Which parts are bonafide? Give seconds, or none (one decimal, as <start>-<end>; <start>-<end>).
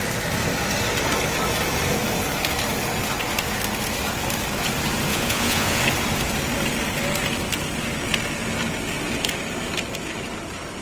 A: 0.0-5.1; 5.8-10.8